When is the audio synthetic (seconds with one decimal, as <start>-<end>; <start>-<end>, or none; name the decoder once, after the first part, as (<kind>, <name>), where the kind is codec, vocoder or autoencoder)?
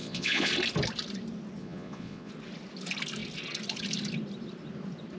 0.0-0.5 (vocoder, Vocos); 1.6-2.3